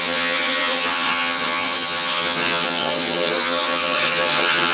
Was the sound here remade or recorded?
remade